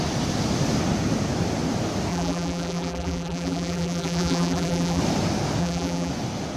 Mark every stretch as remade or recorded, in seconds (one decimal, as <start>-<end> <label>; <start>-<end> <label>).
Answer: 0.0-2.1 recorded; 2.1-5.0 remade; 5.0-5.6 recorded; 5.6-6.1 remade; 6.1-6.6 recorded